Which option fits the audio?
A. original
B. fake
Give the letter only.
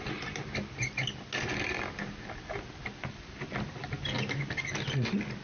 A